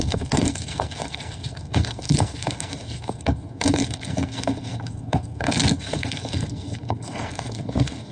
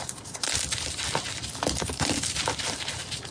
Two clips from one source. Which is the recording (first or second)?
second